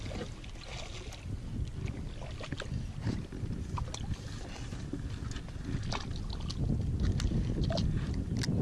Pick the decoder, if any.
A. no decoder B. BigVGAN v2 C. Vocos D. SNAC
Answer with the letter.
A